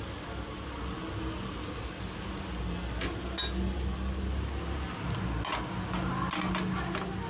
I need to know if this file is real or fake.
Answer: real